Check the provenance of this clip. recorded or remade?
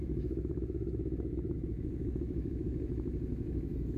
remade